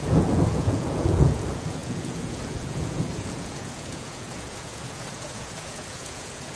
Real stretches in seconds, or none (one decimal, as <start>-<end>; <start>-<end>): none